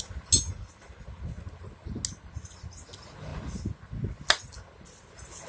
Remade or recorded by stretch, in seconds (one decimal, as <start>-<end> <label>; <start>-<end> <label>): 0.0-5.5 recorded